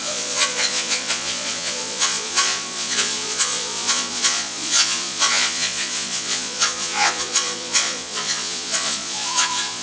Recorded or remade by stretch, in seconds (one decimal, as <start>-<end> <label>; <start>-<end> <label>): 0.0-9.8 remade